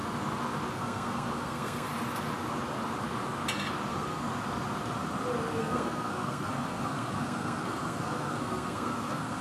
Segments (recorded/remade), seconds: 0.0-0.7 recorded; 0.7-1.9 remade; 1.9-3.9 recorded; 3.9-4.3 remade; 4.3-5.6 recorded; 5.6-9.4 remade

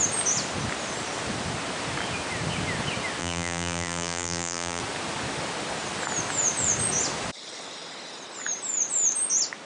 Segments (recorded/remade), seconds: 0.0-3.2 recorded; 3.2-4.8 remade; 4.8-9.7 recorded